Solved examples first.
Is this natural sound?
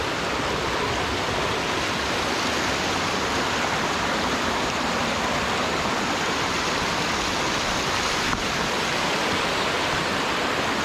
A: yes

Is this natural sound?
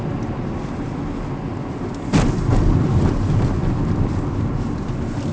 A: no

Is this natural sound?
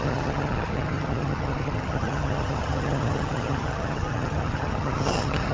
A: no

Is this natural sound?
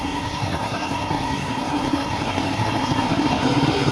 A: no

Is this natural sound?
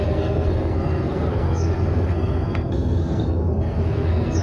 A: no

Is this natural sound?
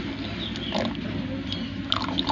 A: yes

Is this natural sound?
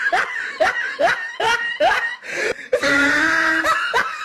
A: no